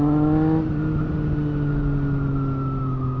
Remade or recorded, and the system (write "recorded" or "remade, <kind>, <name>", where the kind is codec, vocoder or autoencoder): recorded